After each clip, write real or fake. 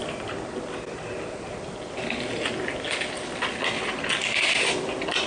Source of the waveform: real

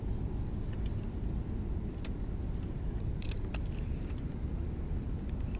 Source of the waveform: fake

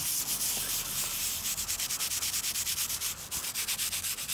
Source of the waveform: fake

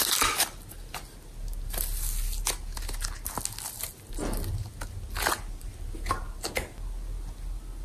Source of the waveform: real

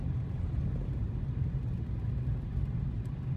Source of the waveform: real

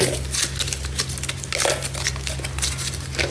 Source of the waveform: real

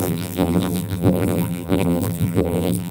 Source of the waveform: fake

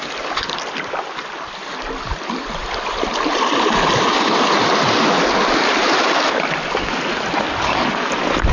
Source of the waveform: real